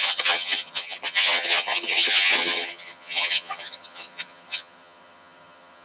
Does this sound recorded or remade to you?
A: remade